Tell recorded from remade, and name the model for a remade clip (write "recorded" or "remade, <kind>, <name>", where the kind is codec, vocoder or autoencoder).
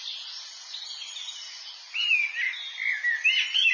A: recorded